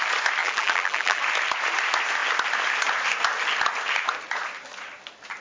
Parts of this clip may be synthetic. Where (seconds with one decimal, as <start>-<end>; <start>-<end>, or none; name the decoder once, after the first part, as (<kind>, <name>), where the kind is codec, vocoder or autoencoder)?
0.4-1.2 (vocoder, BigVGAN v2)